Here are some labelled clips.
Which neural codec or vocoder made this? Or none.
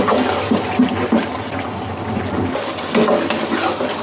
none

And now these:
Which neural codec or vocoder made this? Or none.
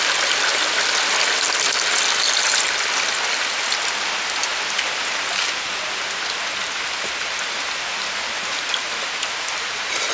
none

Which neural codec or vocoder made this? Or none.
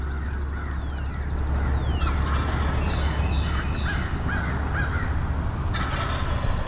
none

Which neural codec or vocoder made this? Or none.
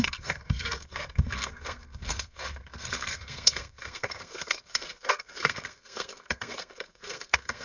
codec, SNAC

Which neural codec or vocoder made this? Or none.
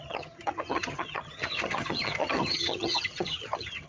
vocoder, HiFi-GAN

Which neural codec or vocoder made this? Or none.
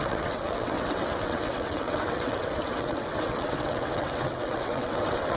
vocoder, WaveNeXt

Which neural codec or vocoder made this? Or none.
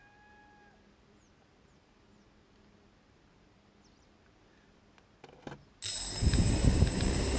none